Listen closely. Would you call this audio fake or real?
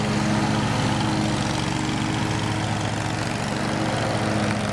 real